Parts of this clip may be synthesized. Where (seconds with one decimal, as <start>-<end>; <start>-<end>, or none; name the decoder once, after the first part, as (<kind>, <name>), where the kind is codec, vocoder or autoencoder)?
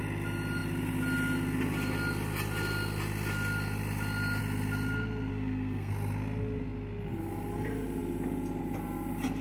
5.3-5.9 (codec, SNAC)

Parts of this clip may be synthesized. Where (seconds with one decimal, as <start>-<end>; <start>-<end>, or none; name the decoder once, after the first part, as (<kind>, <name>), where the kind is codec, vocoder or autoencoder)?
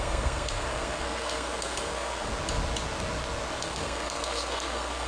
0.0-2.3 (codec, SNAC); 3.6-5.1